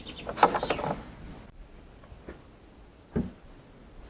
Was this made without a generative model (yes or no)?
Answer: yes